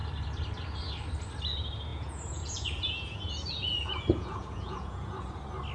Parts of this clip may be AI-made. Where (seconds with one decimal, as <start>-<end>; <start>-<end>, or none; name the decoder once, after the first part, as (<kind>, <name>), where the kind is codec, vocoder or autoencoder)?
1.9-5.3 (vocoder, Vocos)